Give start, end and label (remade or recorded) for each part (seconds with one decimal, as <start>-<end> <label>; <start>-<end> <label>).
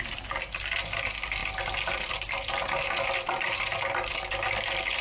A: 0.0-5.0 recorded